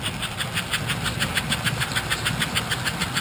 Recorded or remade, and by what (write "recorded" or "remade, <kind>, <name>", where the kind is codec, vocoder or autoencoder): recorded